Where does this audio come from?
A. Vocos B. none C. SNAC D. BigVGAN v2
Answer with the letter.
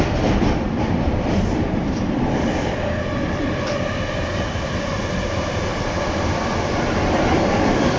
D